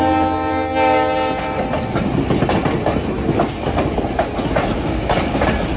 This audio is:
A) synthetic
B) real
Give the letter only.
B